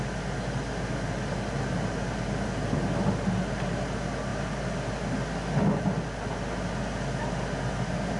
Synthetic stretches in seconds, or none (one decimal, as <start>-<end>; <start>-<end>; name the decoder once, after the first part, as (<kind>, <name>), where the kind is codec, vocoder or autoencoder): none